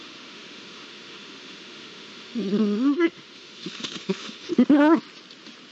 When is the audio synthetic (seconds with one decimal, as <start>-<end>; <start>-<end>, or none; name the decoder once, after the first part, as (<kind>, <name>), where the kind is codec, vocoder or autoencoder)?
0.0-4.5 (autoencoder, DAC-VAE)